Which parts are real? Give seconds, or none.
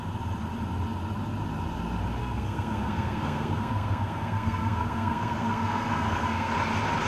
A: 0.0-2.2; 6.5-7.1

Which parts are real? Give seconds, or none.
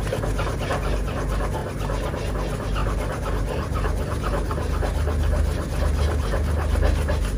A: 0.0-7.4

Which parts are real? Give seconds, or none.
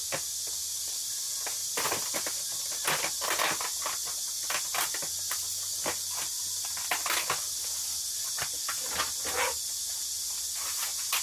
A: 0.0-11.2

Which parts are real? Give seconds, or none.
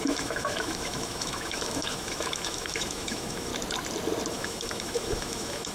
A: 3.5-4.3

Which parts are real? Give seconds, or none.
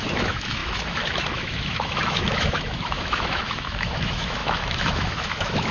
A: none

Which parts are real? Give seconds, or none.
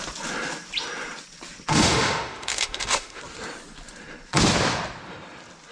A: 0.0-1.7; 3.2-5.7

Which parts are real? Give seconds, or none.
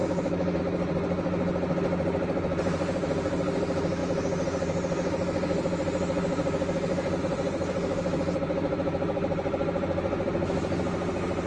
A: 0.6-11.5